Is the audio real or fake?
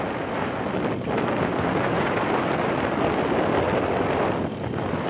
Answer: real